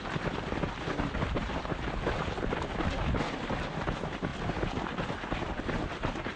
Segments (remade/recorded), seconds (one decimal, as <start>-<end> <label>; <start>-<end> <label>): 0.0-6.4 recorded